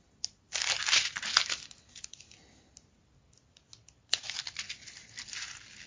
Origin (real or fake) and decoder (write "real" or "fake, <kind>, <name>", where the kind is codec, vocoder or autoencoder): real